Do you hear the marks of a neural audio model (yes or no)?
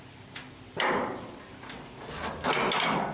no